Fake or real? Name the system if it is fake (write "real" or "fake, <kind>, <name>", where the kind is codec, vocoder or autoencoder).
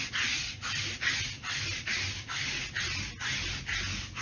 real